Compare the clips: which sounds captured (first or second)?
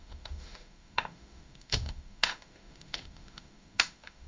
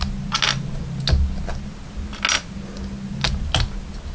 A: second